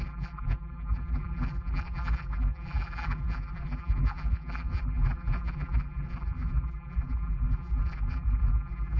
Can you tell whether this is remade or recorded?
remade